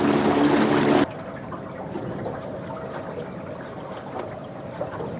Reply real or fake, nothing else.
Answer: real